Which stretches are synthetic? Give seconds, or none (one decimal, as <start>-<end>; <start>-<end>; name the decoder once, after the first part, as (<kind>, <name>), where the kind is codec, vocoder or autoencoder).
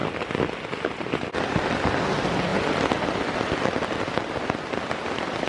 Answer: none